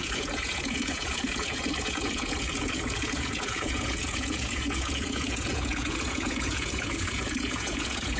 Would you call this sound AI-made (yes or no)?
yes